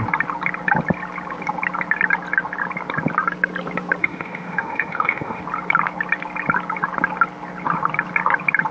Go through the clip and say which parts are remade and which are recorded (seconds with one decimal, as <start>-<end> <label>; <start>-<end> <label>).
0.0-4.0 recorded; 4.0-5.4 remade; 5.4-8.7 recorded